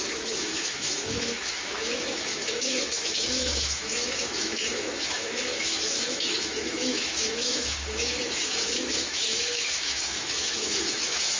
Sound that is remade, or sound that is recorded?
remade